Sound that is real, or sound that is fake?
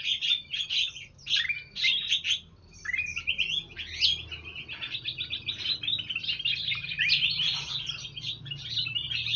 real